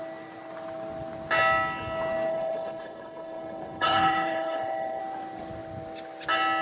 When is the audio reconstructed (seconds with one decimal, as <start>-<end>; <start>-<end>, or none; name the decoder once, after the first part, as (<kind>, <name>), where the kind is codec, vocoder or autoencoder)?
2.3-5.0 (codec, HILCodec)